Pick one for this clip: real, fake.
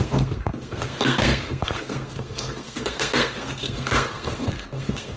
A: fake